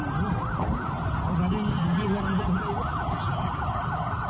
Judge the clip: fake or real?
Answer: real